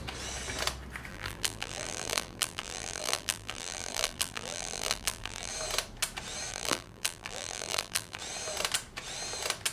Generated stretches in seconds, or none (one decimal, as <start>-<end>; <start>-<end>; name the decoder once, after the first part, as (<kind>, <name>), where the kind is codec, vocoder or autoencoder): 1.1-5.5 (vocoder, BigVGAN v2); 6.5-8.2